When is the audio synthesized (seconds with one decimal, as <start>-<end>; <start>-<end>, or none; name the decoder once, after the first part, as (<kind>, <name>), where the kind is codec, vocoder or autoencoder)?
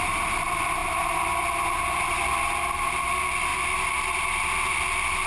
none